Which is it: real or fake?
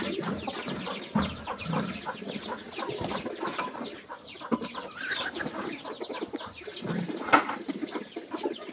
real